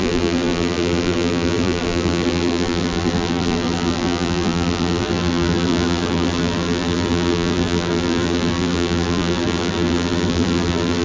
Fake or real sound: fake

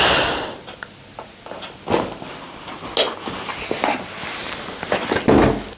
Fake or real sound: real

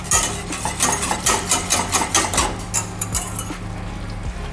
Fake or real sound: real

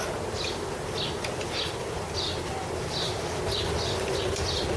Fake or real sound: real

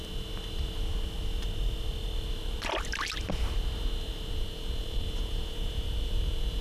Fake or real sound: real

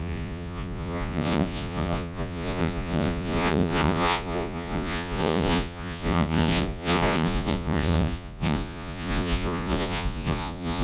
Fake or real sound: fake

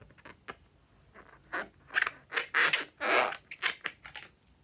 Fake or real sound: real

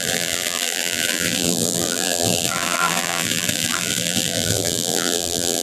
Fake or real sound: fake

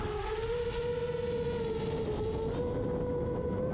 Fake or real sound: real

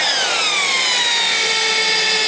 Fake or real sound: real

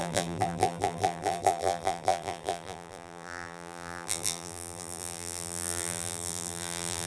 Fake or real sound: fake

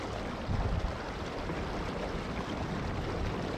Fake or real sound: real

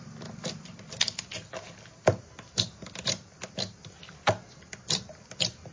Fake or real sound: real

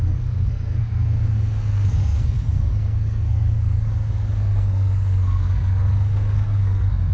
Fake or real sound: fake